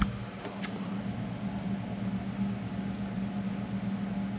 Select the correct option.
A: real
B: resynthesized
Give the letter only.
A